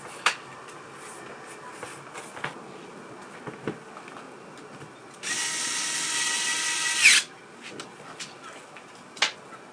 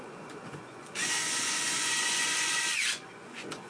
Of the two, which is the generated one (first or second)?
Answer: second